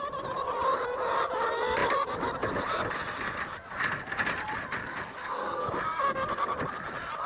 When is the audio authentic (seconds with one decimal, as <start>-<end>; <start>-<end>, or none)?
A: 0.0-5.2; 5.7-7.3